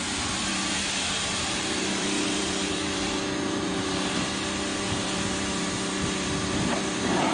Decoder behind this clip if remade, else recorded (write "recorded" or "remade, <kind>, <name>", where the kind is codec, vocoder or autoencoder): remade, vocoder, BigVGAN v2